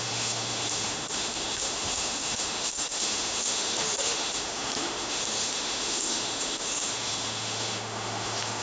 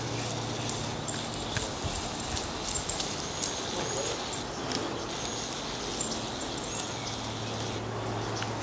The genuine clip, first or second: second